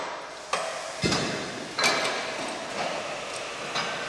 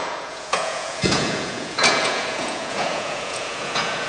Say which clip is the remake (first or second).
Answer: second